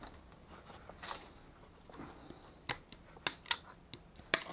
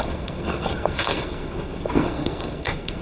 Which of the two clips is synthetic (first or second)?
second